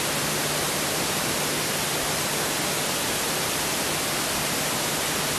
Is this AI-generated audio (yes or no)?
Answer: no